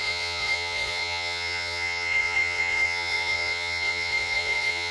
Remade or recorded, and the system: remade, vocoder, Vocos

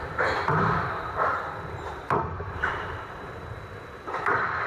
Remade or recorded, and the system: remade, vocoder, BigVGAN v2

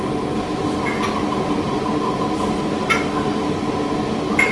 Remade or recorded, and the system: recorded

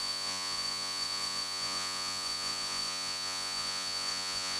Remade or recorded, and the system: remade, vocoder, Vocos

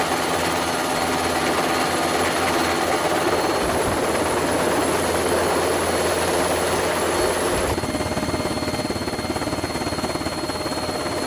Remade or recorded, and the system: recorded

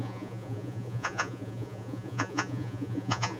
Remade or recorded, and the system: remade, vocoder, Vocos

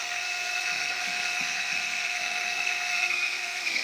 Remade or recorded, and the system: remade, codec, SNAC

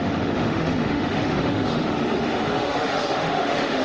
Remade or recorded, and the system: remade, autoencoder, DAC-VAE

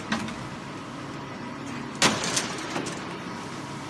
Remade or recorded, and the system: recorded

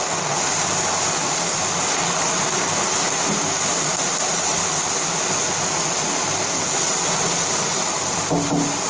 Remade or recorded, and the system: recorded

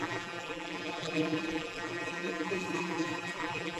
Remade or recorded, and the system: remade, vocoder, BigVGAN v2